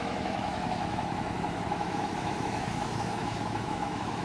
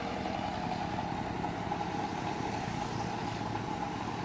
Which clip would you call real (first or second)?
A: second